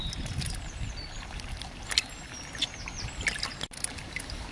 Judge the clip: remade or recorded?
recorded